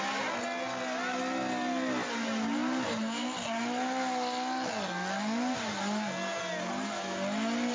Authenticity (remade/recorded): recorded